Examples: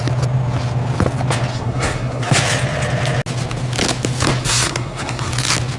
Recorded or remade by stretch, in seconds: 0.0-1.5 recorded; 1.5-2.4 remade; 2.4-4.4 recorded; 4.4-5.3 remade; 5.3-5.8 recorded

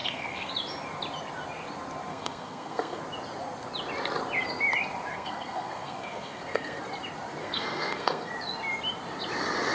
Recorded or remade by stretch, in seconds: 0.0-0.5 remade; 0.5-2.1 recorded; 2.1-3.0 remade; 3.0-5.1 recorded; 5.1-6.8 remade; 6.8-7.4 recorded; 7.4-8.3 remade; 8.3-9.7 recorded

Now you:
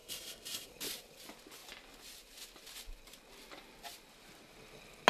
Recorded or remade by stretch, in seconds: 0.0-0.7 remade; 0.7-5.1 recorded

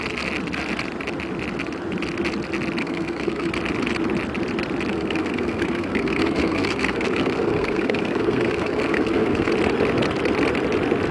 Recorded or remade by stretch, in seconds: 0.0-2.8 recorded; 2.8-3.5 remade; 3.5-4.9 recorded; 4.9-9.5 remade; 9.5-11.1 recorded

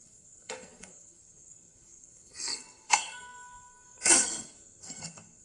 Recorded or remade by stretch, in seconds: 0.0-5.4 remade

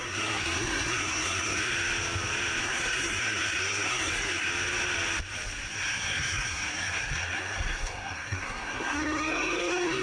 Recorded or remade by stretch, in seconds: 0.0-1.7 remade; 1.7-2.6 recorded; 2.6-4.5 remade; 4.5-5.7 recorded; 5.7-10.0 remade